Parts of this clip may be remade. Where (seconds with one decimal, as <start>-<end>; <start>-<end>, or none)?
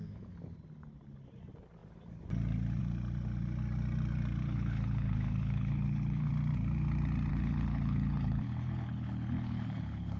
4.4-6.3; 7.3-10.2